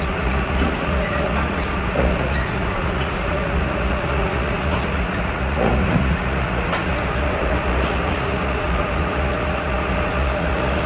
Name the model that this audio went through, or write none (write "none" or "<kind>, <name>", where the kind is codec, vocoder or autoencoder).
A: vocoder, Vocos